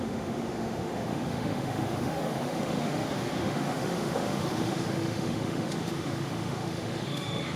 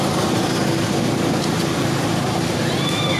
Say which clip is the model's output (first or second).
first